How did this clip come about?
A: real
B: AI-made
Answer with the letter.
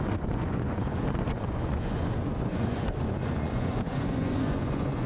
B